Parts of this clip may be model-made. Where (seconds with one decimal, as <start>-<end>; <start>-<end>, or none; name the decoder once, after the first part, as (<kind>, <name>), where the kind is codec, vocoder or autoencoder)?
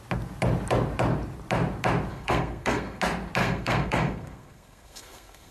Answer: 2.1-3.0 (codec, SNAC); 3.4-5.5